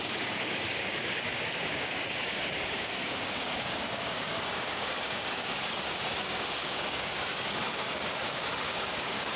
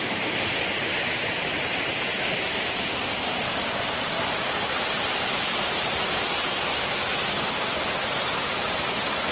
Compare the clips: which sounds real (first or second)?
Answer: second